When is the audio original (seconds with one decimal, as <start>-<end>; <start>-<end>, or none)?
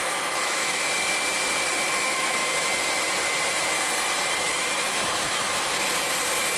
0.9-2.0; 2.4-4.4; 5.7-6.6